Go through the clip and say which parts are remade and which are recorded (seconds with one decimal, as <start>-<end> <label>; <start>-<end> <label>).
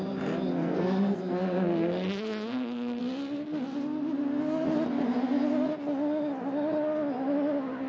0.0-0.5 recorded; 0.5-3.0 remade; 3.0-7.9 recorded